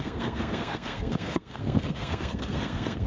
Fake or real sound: fake